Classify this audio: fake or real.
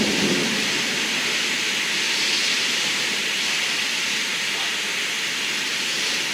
real